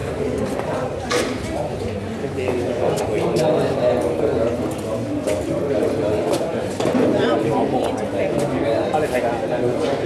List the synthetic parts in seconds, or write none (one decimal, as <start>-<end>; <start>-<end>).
2.2-3.0